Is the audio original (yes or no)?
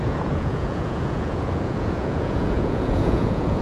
no